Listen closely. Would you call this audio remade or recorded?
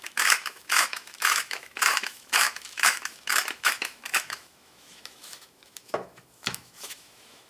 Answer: remade